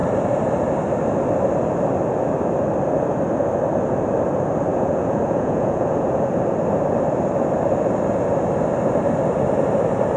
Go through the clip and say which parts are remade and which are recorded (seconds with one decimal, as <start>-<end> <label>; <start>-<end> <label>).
0.0-4.7 recorded; 4.7-6.4 remade; 6.4-10.2 recorded